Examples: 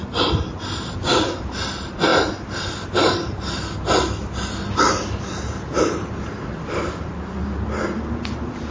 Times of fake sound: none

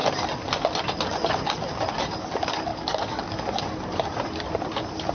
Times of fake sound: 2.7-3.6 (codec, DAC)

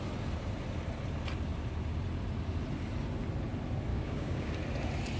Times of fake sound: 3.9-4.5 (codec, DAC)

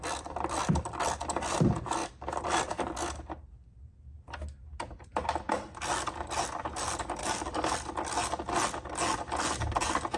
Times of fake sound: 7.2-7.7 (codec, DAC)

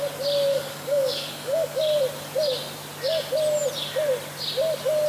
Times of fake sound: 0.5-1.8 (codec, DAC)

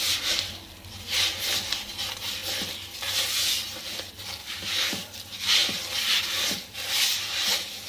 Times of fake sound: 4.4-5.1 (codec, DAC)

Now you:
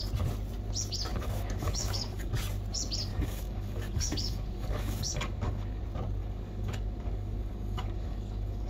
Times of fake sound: 1.1-2.3 (codec, DAC); 3.1-5.8; 6.2-8.7